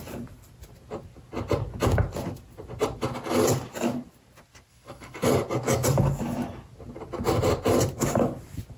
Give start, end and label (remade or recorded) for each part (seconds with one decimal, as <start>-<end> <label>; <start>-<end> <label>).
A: 0.0-4.7 recorded; 4.7-5.3 remade; 5.3-8.8 recorded